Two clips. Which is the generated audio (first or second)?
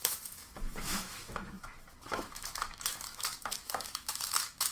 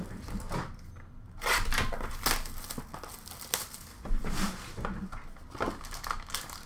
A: first